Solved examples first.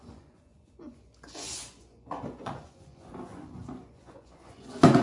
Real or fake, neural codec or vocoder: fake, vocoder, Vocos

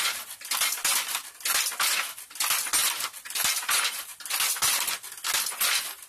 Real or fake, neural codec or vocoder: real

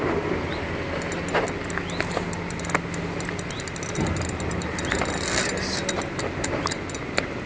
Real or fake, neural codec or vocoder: real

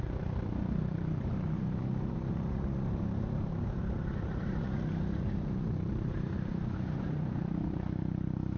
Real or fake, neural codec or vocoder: fake, vocoder, BigVGAN v2